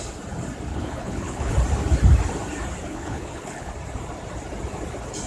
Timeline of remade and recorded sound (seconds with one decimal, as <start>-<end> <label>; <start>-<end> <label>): 0.0-0.7 recorded; 0.7-1.5 remade; 1.5-2.9 recorded; 2.9-3.7 remade; 3.7-5.3 recorded